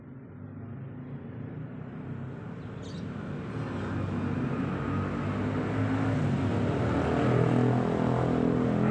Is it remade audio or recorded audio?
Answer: recorded